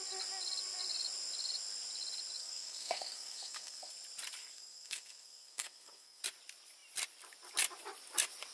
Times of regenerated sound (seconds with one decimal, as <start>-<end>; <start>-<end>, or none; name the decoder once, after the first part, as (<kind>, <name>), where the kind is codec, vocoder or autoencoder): 2.4-3.9 (codec, SNAC); 4.4-6.2